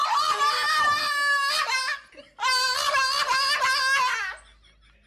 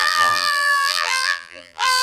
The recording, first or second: first